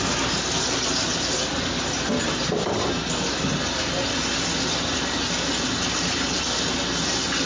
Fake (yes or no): no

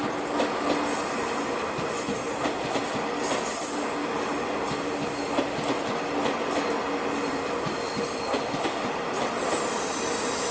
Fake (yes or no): no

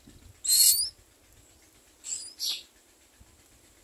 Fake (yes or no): no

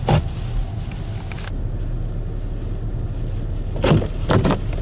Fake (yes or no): no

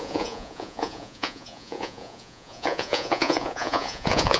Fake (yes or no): yes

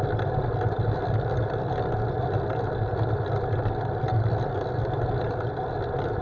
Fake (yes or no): no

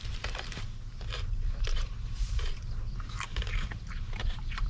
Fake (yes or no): yes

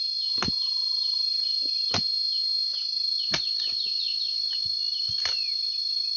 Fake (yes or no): no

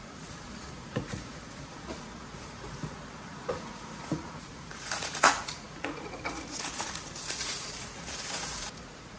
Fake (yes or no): yes